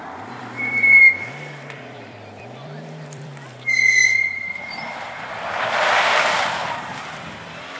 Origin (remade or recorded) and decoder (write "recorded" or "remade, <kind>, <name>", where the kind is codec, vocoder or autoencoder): remade, vocoder, BigVGAN v2